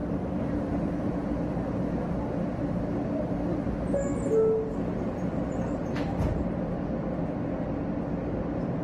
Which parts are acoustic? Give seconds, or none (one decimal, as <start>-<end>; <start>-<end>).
1.1-8.8